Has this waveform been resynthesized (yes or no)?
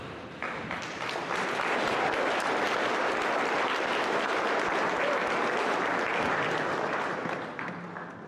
no